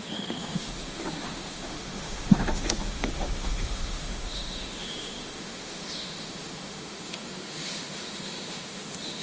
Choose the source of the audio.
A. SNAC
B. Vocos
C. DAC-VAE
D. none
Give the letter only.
C